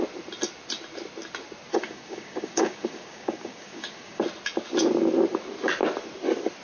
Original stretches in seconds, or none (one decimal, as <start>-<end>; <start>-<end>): 0.0-1.7; 4.2-6.6